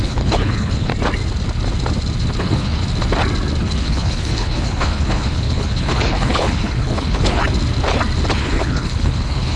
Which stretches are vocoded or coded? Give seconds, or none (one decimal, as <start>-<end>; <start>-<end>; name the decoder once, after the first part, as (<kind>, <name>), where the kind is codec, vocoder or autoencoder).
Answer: 0.0-0.9 (codec, HILCodec); 2.4-2.8; 3.6-7.4; 8.4-9.6